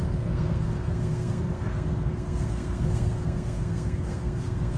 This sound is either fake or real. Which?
fake